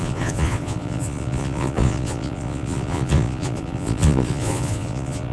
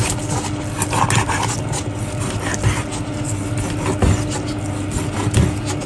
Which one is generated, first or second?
first